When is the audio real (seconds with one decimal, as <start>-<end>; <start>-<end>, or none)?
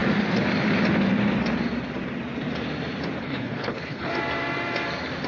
0.0-3.2; 4.1-5.3